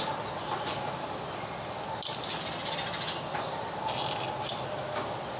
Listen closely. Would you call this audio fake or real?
real